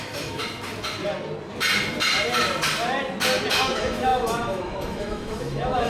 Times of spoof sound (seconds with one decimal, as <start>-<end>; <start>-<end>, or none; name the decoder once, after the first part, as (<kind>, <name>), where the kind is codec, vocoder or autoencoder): 0.0-0.4 (autoencoder, DAC-VAE); 3.5-5.9